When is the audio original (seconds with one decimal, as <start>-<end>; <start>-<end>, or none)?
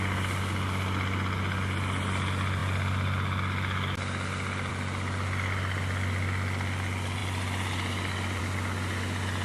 0.0-9.4